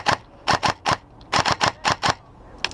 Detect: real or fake real